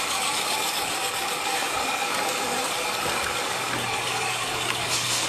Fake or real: fake